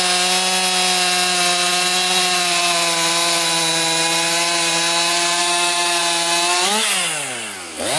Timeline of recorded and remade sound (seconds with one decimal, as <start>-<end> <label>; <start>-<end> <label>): 0.0-5.4 recorded; 5.4-6.0 remade; 6.0-8.0 recorded